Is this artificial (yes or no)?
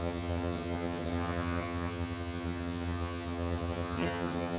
yes